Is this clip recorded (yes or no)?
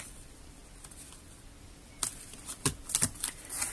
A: yes